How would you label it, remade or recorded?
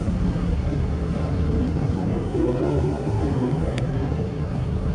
remade